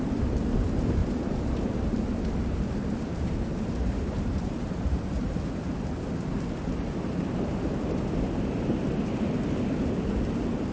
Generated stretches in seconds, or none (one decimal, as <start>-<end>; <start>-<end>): 1.0-5.9